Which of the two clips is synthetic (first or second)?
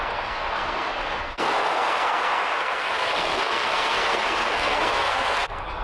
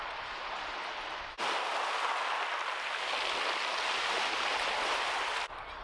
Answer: first